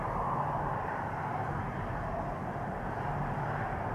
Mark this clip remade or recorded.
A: recorded